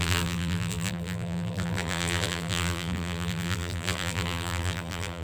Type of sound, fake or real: fake